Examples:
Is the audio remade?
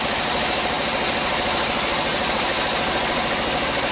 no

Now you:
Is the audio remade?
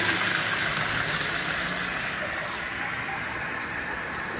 no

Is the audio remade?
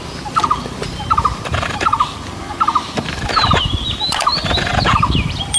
yes